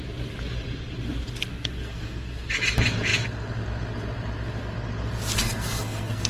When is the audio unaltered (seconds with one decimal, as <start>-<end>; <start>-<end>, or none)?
0.0-1.5; 2.5-5.4